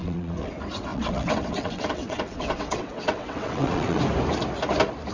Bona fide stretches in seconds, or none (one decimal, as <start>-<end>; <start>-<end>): 0.5-0.9; 4.0-5.1